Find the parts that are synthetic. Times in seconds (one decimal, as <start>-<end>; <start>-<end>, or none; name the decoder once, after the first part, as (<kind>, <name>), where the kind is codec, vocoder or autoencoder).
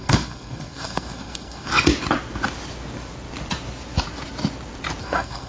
0.0-1.7 (codec, SNAC); 5.0-5.5